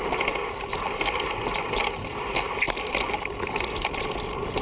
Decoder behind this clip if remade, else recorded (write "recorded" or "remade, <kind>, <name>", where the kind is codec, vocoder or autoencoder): recorded